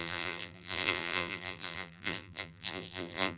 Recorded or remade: remade